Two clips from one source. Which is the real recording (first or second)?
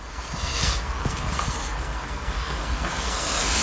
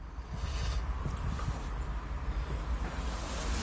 second